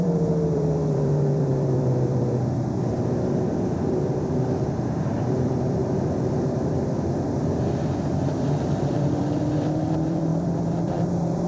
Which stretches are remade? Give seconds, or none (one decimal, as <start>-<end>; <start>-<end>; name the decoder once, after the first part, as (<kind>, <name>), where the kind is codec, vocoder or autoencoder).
0.0-11.5 (vocoder, BigVGAN v2)